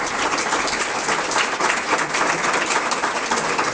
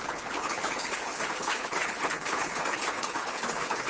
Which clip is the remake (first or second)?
second